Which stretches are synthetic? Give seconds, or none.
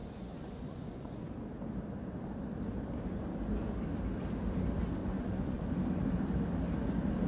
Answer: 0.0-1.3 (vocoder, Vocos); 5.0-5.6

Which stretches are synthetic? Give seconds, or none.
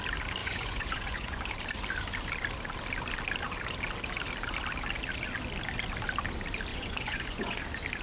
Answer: 0.4-1.4 (vocoder, Vocos); 6.7-7.6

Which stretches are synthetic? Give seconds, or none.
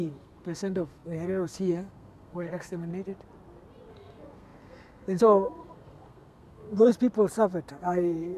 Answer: 0.0-2.9 (codec, SNAC); 3.9-6.9; 7.7-8.4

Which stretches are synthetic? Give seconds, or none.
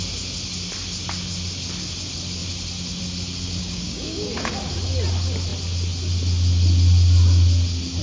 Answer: 3.6-4.5 (codec, DAC)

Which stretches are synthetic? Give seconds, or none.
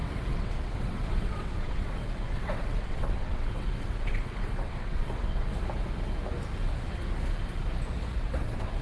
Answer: 0.0-5.5 (vocoder, WaveNeXt); 8.2-8.8